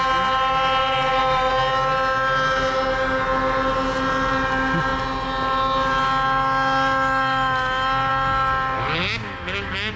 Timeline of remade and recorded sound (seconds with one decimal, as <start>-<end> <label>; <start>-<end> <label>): 0.0-0.8 recorded; 0.8-1.5 remade; 1.5-10.0 recorded

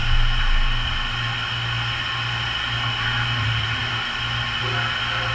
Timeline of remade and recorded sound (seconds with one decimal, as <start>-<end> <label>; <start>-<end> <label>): 0.0-5.3 recorded

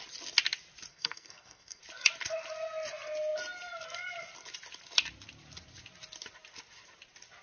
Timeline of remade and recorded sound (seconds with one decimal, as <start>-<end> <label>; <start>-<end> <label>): 0.0-0.9 recorded; 0.9-1.8 remade; 1.8-7.4 recorded

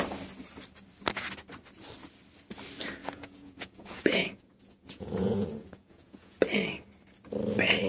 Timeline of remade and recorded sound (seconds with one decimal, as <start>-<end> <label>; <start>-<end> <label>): 0.0-3.0 recorded; 3.0-6.4 remade; 6.4-7.9 recorded

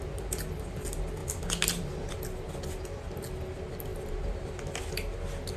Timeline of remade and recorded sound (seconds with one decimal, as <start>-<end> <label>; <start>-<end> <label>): 0.0-5.6 recorded

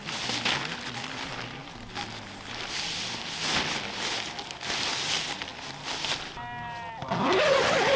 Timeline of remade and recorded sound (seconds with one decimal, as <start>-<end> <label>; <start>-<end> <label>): 0.0-8.0 recorded